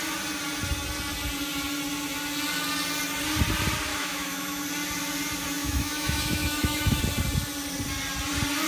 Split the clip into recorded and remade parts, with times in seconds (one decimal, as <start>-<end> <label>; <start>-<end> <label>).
0.0-3.9 recorded; 3.9-4.6 remade; 4.6-5.6 recorded; 5.6-7.0 remade; 7.0-8.7 recorded